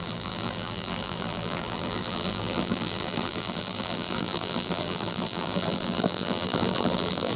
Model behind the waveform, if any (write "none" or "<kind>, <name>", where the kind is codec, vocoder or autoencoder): vocoder, BigVGAN v2